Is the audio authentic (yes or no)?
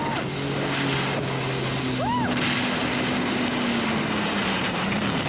yes